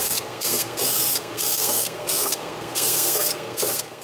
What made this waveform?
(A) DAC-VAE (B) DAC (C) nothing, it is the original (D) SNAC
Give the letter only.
D